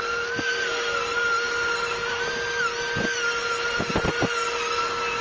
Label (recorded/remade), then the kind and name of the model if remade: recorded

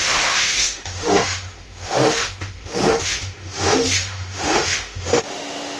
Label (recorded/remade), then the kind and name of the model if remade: remade, autoencoder, DAC-VAE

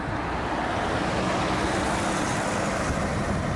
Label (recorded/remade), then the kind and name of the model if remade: recorded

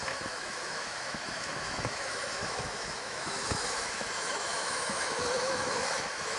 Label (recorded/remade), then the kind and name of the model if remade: remade, autoencoder, DAC-VAE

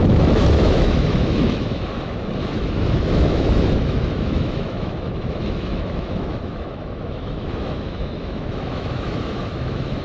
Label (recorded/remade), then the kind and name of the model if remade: remade, autoencoder, DAC-VAE